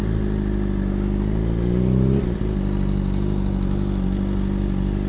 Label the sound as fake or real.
real